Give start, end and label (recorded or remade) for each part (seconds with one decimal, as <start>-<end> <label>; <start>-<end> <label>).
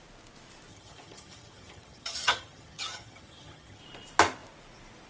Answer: 0.0-0.7 recorded; 0.7-3.8 remade; 3.8-5.1 recorded